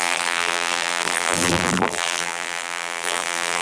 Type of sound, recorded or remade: remade